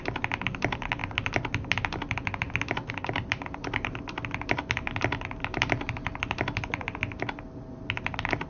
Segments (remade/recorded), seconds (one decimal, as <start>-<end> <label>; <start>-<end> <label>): 0.0-8.5 recorded